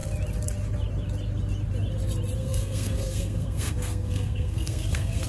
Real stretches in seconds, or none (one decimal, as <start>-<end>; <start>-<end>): 0.0-2.4